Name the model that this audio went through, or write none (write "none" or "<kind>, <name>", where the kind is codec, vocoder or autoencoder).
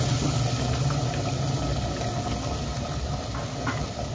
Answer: none